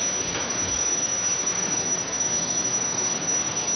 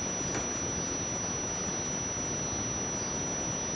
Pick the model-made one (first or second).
first